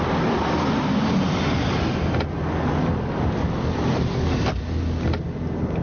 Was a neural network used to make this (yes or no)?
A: no